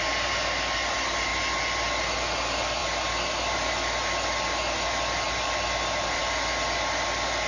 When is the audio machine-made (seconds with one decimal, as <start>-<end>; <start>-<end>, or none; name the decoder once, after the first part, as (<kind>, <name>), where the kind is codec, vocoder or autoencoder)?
none